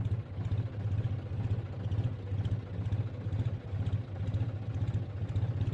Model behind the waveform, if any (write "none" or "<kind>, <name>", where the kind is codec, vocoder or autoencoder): none